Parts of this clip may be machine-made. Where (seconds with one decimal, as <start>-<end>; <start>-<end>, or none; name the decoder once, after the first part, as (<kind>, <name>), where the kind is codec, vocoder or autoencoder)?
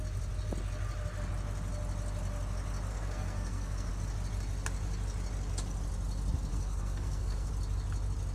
2.9-3.9 (codec, SNAC); 6.5-7.5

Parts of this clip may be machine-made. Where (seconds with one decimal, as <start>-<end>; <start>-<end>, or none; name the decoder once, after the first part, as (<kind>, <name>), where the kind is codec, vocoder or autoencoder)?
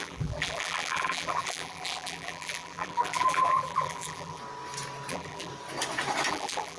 0.0-4.4 (vocoder, BigVGAN v2); 5.1-5.5; 6.3-6.8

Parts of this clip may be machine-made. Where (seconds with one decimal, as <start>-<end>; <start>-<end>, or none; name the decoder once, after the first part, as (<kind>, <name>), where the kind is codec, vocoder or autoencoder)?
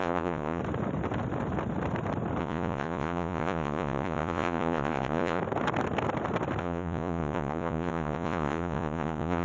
0.0-0.6 (vocoder, Vocos); 2.4-5.4; 6.6-9.4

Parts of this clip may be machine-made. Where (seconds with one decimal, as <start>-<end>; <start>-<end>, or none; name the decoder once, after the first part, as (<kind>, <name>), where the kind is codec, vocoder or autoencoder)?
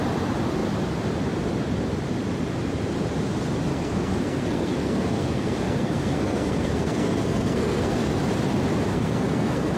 3.7-8.2 (codec, SNAC); 8.9-9.8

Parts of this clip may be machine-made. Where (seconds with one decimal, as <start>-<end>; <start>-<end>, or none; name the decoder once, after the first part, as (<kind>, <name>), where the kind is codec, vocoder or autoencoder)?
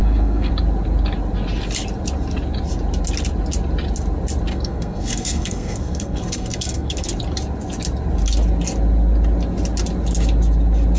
0.0-0.5 (codec, SNAC); 4.5-7.1